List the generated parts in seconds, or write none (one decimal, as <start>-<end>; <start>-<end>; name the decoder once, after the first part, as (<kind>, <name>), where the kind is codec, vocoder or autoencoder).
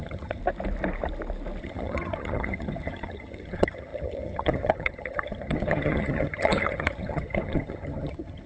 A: 0.0-0.4 (vocoder, HiFi-GAN); 1.6-8.5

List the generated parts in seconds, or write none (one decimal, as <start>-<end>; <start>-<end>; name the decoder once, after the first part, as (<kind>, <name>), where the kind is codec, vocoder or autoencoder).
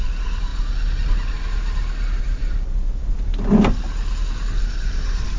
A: 0.0-0.5 (vocoder, BigVGAN v2); 2.2-3.3; 4.7-5.4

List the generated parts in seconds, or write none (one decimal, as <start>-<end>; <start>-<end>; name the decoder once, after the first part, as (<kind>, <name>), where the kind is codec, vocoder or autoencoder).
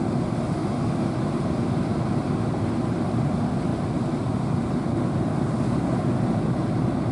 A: none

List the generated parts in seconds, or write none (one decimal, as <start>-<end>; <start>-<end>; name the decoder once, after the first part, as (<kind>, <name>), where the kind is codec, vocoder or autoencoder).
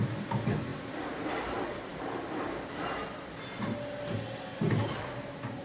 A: none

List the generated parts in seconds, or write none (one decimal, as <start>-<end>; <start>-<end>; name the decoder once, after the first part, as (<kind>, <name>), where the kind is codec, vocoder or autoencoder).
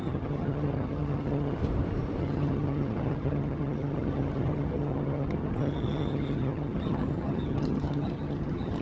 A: 0.0-1.6 (vocoder, HiFi-GAN); 2.2-8.8